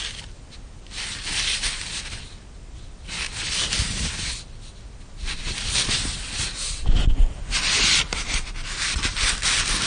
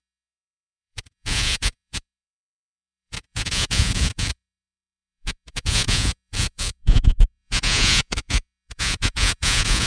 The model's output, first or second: second